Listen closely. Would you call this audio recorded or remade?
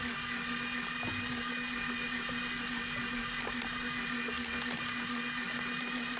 recorded